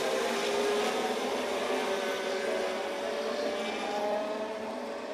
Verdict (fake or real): real